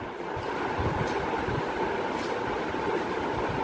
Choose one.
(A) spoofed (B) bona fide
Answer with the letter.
B